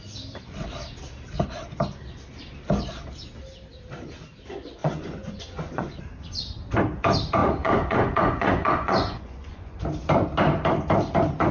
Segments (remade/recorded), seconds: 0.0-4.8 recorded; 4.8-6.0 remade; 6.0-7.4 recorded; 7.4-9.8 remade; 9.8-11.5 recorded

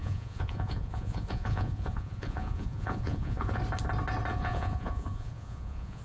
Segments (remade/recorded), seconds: 0.0-3.6 remade; 3.6-4.3 recorded; 4.3-6.0 remade